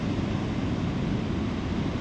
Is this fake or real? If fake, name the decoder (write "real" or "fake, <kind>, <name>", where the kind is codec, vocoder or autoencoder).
real